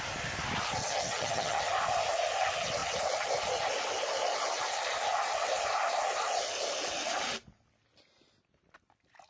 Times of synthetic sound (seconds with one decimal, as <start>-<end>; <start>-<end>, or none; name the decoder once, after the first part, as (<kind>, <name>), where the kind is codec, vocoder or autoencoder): 0.8-1.6 (vocoder, HiFi-GAN)